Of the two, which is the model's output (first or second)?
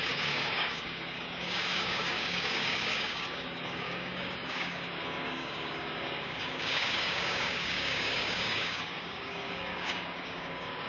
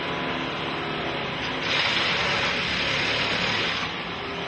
first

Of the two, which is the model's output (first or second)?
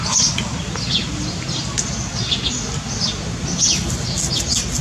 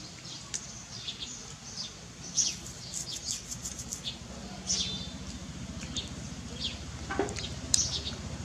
second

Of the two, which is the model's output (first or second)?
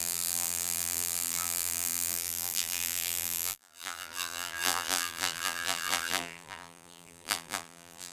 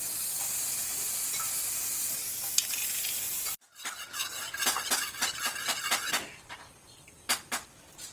first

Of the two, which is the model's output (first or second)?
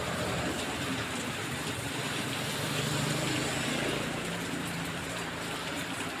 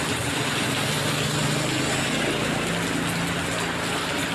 first